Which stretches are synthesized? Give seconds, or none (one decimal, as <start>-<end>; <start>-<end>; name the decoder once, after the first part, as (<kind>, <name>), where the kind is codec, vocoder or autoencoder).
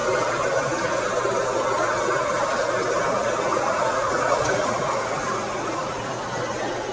3.5-6.2 (vocoder, Vocos)